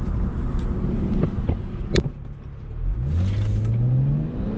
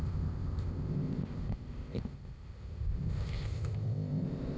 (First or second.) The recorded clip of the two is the first